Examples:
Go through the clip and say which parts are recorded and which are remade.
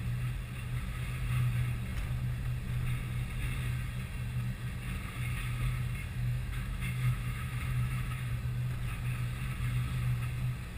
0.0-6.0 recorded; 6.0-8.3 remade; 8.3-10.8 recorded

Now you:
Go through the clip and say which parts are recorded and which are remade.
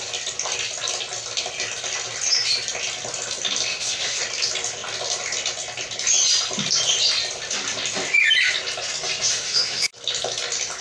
0.0-3.7 recorded; 3.7-4.2 remade; 4.2-9.3 recorded; 9.3-9.9 remade; 9.9-10.8 recorded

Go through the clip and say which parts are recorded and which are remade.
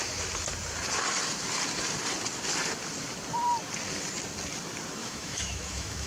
0.0-5.0 recorded; 5.0-6.1 remade